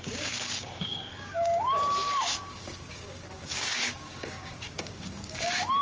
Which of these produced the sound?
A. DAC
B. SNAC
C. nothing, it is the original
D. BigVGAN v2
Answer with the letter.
A